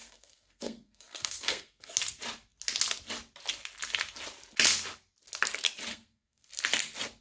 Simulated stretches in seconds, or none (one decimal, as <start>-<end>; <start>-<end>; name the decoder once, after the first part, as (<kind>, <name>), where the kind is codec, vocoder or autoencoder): 0.0-1.9 (codec, SNAC); 5.9-6.5